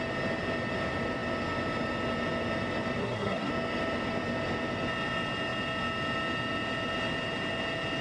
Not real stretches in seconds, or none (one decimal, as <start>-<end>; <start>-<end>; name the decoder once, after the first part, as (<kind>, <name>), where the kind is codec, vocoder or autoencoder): 3.0-3.5 (codec, SNAC)